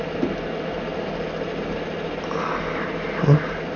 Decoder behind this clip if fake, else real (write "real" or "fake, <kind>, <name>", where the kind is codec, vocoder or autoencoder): real